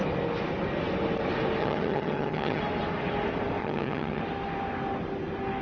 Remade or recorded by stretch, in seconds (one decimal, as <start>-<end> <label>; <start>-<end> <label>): 0.0-1.6 recorded; 1.6-2.6 remade; 2.6-3.6 recorded; 3.6-4.2 remade; 4.2-5.6 recorded